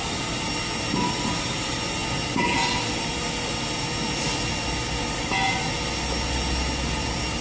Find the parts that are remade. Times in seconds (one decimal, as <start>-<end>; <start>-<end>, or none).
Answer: none